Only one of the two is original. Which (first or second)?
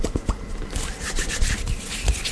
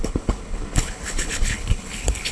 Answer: first